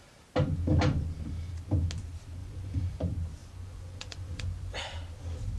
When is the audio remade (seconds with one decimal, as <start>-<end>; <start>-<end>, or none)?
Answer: 2.4-3.0; 3.4-4.8